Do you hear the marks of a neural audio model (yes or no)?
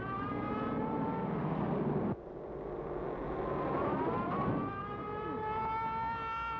no